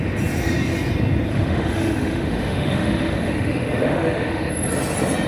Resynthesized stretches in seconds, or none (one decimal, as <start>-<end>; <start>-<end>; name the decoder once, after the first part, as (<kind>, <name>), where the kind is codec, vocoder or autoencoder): 1.3-4.5 (autoencoder, DAC-VAE)